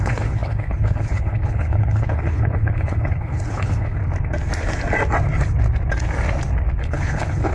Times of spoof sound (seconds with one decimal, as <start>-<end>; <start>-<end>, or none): 0.0-4.0; 6.8-7.5